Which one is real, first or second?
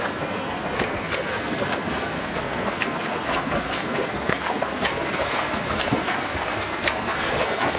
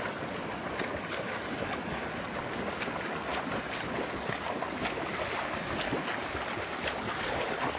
second